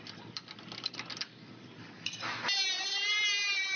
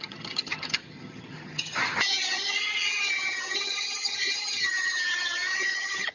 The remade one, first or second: second